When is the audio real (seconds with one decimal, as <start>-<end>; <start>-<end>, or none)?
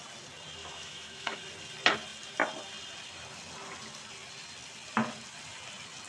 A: 0.0-0.6; 1.4-6.1